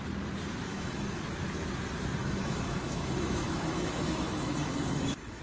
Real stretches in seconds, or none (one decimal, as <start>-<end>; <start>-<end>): 0.0-0.7; 1.2-2.2

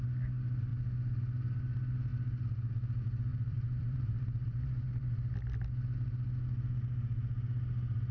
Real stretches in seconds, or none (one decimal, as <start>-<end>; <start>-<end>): 0.0-3.3; 5.1-8.1

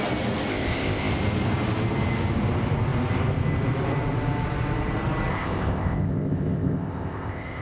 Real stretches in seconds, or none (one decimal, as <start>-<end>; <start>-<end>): 0.0-0.5; 1.1-5.3

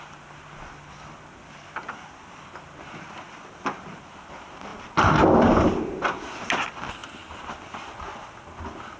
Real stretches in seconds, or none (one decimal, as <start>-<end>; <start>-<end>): 0.0-9.0

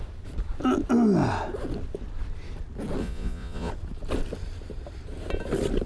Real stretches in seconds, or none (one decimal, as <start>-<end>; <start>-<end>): 0.0-3.0; 3.7-5.9

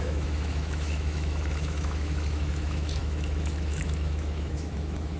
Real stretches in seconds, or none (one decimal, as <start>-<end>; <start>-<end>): none

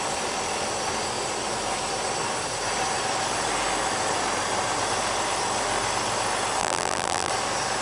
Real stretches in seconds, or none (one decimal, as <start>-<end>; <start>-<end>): 0.0-6.6; 7.3-7.8